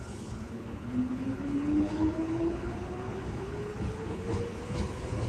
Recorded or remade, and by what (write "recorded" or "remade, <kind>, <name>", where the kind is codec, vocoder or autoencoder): remade, codec, HILCodec